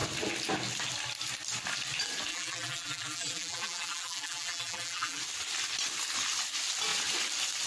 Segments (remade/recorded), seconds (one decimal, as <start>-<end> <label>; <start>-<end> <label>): 0.0-2.3 recorded; 2.3-5.2 remade; 5.2-7.7 recorded